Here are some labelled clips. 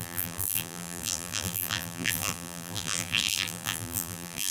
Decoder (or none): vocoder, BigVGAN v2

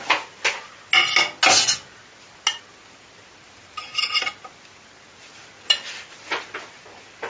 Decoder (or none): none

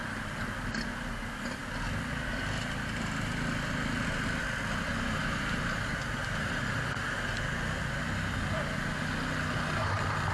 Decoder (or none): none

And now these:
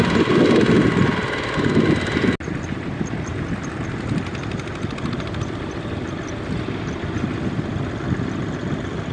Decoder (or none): none